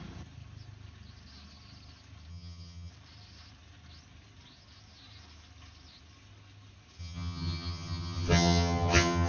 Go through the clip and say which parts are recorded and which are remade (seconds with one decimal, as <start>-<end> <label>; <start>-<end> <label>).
0.0-2.3 recorded; 2.3-2.9 remade; 2.9-7.0 recorded; 7.0-9.3 remade